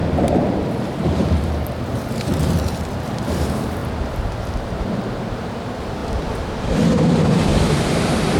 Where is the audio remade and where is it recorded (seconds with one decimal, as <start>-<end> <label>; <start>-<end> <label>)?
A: 0.0-3.8 remade; 3.8-4.5 recorded; 4.5-6.0 remade; 6.0-6.6 recorded; 6.6-7.5 remade; 7.5-8.4 recorded

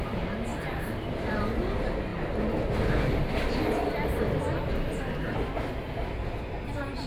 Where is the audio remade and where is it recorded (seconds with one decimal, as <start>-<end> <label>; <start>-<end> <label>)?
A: 0.0-0.5 recorded; 0.5-1.4 remade; 1.4-7.1 recorded

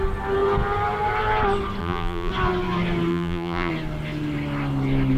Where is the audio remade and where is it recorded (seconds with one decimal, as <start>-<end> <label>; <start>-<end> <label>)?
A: 0.0-1.8 recorded; 1.8-2.3 remade; 2.3-3.1 recorded; 3.1-3.7 remade; 3.7-5.2 recorded

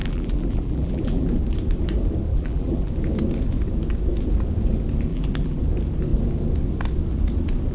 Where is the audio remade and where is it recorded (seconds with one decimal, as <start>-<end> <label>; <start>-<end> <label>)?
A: 0.0-1.3 remade; 1.3-2.3 recorded; 2.3-2.9 remade; 2.9-5.1 recorded; 5.1-5.6 remade; 5.6-7.7 recorded